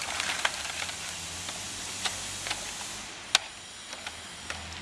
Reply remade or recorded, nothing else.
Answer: recorded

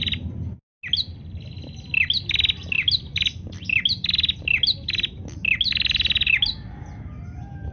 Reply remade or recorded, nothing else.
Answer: recorded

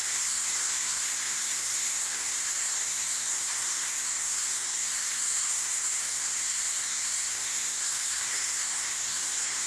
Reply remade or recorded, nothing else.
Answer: remade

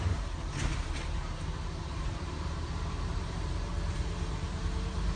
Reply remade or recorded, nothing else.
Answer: remade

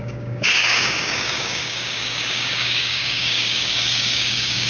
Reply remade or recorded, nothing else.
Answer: remade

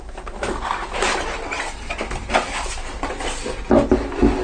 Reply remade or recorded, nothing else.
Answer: recorded